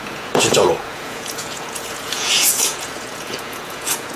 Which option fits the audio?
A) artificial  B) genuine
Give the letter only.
A